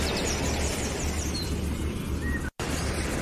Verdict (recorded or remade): recorded